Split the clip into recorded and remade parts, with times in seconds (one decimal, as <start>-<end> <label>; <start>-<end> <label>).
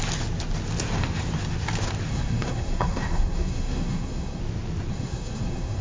0.0-2.1 recorded; 2.1-4.4 remade; 4.4-4.9 recorded; 4.9-5.8 remade